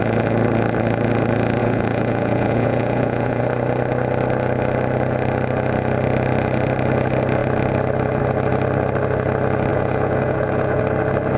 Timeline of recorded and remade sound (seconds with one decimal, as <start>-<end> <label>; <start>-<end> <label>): 0.0-1.6 recorded; 1.6-3.4 remade; 3.4-9.7 recorded; 9.7-10.8 remade; 10.8-11.4 recorded